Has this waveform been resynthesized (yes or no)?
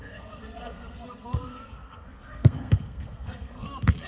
yes